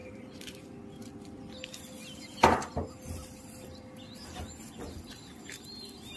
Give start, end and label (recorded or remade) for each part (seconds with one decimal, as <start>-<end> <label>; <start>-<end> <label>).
0.0-0.7 remade; 0.7-6.2 recorded

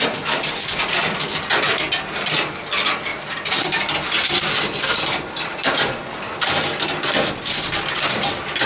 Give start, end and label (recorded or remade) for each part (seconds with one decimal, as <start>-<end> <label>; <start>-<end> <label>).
0.0-3.1 recorded; 3.1-3.9 remade; 3.9-5.5 recorded; 5.5-6.0 remade; 6.0-8.7 recorded

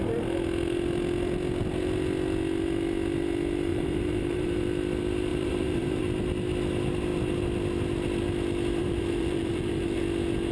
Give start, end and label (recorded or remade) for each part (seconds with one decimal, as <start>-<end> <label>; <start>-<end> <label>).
0.0-3.7 recorded; 3.7-4.6 remade; 4.6-5.3 recorded; 5.3-6.0 remade; 6.0-8.8 recorded; 8.8-10.0 remade; 10.0-10.5 recorded

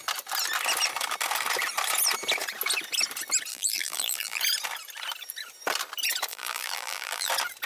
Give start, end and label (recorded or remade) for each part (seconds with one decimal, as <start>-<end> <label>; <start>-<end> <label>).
0.0-3.5 recorded; 3.5-4.4 remade; 4.4-6.3 recorded; 6.3-7.3 remade; 7.3-7.7 recorded

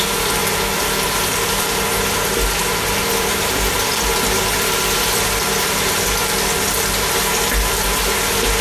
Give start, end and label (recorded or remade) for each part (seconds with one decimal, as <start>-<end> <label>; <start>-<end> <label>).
0.0-8.6 remade